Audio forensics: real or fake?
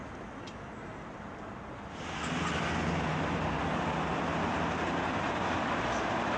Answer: real